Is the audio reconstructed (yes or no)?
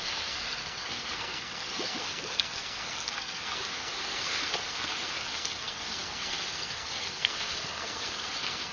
yes